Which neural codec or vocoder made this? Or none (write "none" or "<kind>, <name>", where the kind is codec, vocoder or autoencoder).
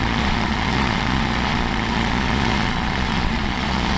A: vocoder, Vocos